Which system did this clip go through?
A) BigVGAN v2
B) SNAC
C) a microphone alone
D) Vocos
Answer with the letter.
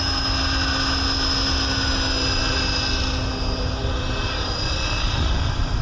C